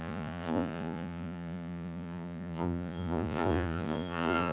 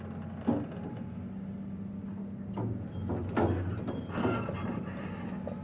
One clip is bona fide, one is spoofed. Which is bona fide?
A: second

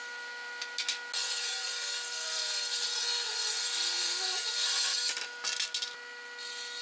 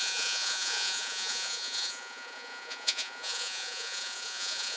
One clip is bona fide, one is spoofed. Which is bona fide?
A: first